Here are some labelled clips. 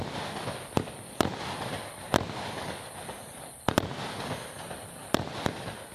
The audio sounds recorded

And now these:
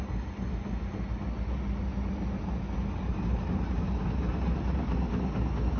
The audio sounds recorded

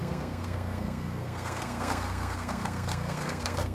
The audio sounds remade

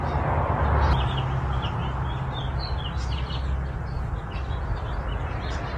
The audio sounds recorded